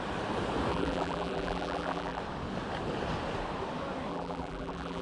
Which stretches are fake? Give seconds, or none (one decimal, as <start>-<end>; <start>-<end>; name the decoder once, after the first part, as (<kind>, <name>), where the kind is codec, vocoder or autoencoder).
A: 0.7-2.2 (vocoder, BigVGAN v2); 4.1-5.0